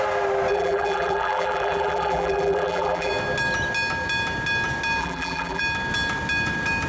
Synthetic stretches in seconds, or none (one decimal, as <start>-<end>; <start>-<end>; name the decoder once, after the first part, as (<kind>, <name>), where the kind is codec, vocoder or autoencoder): 0.5-3.1 (vocoder, BigVGAN v2); 5.0-5.6